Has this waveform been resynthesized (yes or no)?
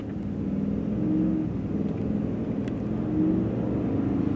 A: no